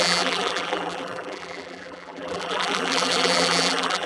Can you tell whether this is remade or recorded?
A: remade